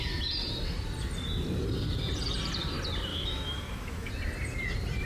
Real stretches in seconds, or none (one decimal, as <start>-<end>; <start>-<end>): 0.0-3.1; 4.1-5.1